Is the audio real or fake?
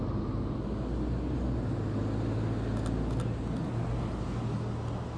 real